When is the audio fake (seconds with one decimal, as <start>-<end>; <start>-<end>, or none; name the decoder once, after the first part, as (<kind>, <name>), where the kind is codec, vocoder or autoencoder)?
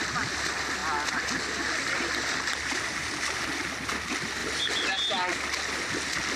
4.4-5.0 (vocoder, BigVGAN v2)